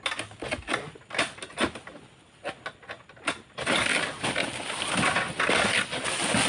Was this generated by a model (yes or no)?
no